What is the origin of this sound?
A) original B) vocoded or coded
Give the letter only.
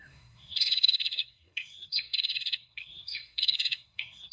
B